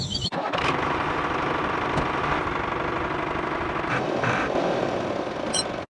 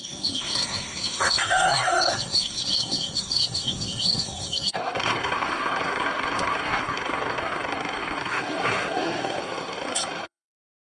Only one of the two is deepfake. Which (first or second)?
second